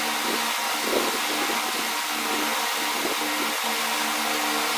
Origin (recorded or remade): recorded